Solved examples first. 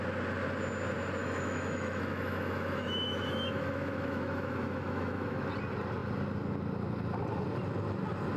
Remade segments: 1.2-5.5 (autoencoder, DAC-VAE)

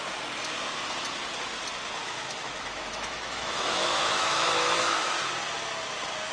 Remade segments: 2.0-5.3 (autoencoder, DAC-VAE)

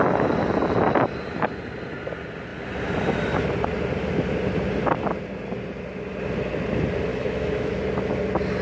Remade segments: 7.1-7.8 (autoencoder, DAC-VAE)

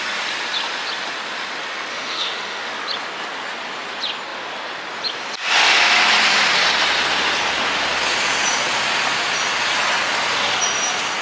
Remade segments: 1.9-2.7 (autoencoder, DAC-VAE)